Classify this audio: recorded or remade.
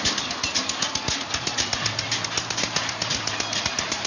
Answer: recorded